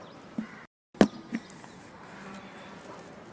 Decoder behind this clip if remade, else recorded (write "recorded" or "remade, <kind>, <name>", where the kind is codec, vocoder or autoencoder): recorded